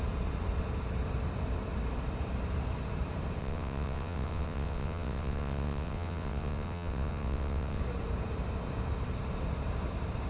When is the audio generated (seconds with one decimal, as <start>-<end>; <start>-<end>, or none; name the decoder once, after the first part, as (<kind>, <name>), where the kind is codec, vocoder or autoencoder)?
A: 3.4-7.8 (vocoder, WaveNeXt)

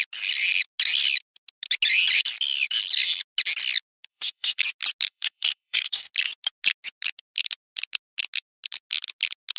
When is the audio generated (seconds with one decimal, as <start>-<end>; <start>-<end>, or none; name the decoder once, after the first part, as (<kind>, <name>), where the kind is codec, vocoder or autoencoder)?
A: 4.1-4.6 (codec, SNAC); 5.1-6.1

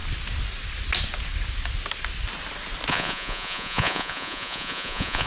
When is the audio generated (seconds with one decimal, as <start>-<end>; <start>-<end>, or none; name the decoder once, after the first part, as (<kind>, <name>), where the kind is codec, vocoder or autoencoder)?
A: 2.9-5.3 (vocoder, Vocos)

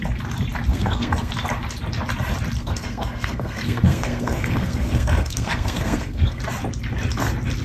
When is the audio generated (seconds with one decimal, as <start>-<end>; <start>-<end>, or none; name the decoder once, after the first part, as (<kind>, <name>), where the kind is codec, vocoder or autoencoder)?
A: 0.7-1.3 (codec, SNAC); 2.6-6.4

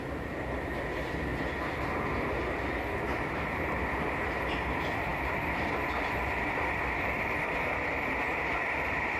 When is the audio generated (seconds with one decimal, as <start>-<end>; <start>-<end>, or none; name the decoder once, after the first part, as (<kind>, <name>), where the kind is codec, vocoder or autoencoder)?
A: 5.1-9.2 (vocoder, BigVGAN v2)